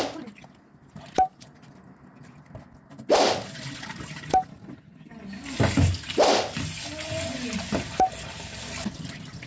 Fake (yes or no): no